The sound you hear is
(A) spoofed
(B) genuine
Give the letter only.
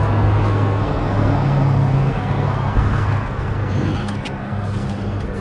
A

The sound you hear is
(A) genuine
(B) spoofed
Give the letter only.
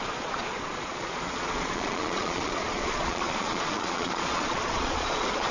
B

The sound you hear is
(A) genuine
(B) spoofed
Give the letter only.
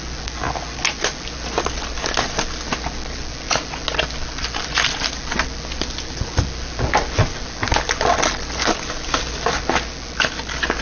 A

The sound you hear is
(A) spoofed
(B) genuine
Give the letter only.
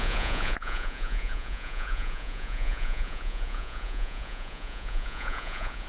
A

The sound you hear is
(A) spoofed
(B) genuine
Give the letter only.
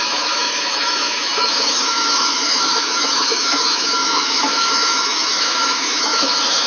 A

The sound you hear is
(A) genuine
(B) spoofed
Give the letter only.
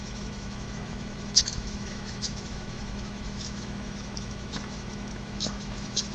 B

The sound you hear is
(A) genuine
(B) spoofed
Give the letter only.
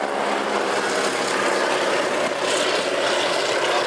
A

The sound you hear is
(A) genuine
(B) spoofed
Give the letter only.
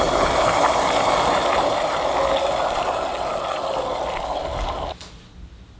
A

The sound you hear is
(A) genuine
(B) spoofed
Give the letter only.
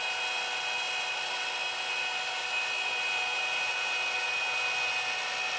A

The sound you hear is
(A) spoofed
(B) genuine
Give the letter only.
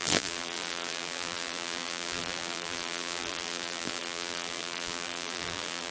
A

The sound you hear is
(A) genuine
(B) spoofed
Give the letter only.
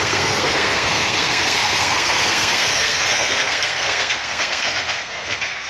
B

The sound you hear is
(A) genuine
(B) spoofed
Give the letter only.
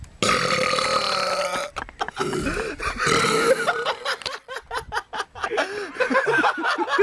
A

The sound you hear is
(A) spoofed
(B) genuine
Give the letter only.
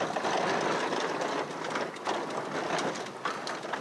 B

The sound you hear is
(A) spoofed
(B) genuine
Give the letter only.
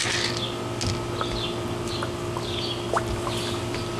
B